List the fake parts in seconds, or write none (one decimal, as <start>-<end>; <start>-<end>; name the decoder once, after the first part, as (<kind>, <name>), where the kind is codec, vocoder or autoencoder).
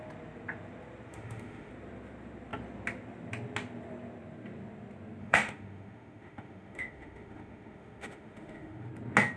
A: 1.1-1.7 (autoencoder, DAC-VAE); 5.2-8.9